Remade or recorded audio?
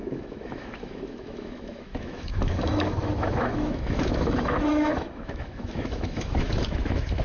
remade